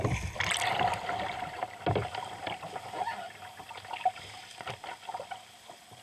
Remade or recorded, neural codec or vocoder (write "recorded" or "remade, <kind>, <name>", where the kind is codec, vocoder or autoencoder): recorded